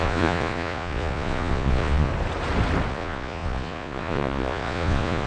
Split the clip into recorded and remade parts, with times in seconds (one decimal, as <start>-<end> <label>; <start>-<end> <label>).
0.0-2.1 remade; 2.1-2.9 recorded; 2.9-5.3 remade